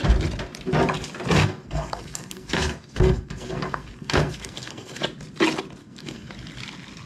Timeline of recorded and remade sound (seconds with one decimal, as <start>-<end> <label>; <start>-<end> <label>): 0.0-1.4 recorded; 1.4-5.0 remade; 5.0-5.8 recorded; 5.8-6.3 remade; 6.3-7.1 recorded